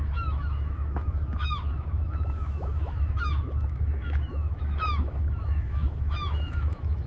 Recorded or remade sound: remade